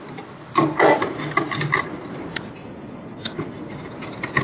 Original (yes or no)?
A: yes